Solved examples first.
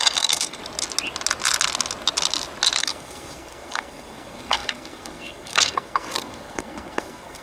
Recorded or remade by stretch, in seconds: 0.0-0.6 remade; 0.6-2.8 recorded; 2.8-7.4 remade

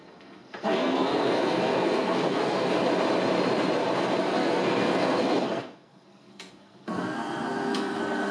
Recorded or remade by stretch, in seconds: 0.0-2.8 remade; 2.8-4.2 recorded; 4.2-8.3 remade

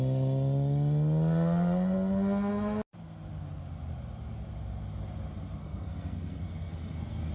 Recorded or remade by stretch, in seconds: 0.0-5.6 recorded; 5.6-7.3 remade

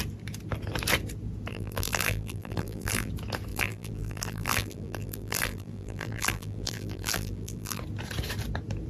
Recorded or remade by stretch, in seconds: 0.0-1.5 recorded; 1.5-3.1 remade; 3.1-3.5 recorded; 3.5-7.8 remade; 7.8-8.9 recorded

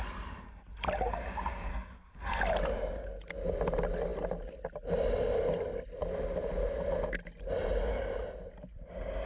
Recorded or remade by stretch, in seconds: 0.0-1.7 recorded; 1.7-2.4 remade; 2.4-9.3 recorded

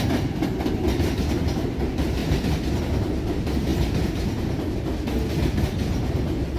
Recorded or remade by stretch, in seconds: 0.0-2.2 recorded; 2.2-2.8 remade; 2.8-6.6 recorded